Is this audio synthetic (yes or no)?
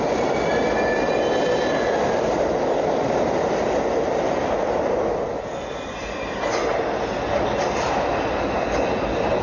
no